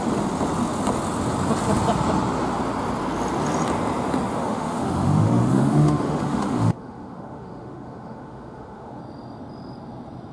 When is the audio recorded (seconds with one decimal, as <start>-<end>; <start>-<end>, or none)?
0.0-4.4; 9.0-10.3